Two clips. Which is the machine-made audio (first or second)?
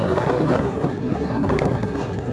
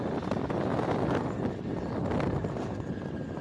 first